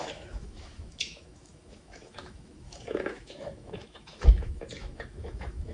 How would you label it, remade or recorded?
remade